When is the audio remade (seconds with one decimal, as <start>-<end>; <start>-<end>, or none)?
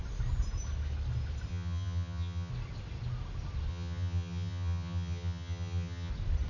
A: 1.5-2.5; 3.7-6.1